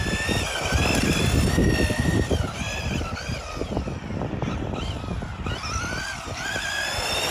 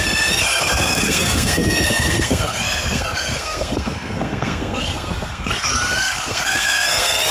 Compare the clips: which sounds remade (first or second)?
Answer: second